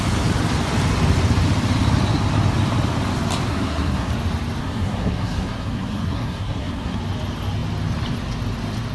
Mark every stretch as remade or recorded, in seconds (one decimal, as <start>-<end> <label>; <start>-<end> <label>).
0.0-3.5 recorded; 3.5-4.1 remade; 4.1-4.6 recorded; 4.6-7.0 remade; 7.0-8.9 recorded